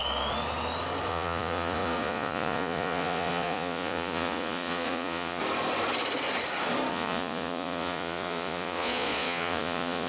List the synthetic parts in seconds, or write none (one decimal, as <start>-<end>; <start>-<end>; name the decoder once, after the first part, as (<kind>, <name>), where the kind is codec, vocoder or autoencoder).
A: 1.1-5.4 (vocoder, Vocos); 6.9-10.1